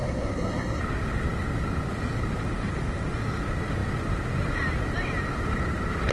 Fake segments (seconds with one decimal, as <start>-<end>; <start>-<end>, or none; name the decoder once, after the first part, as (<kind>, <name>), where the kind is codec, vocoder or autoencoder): 0.0-0.8 (codec, SNAC)